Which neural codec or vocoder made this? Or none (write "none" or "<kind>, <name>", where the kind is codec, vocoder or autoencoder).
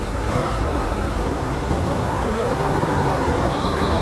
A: codec, SNAC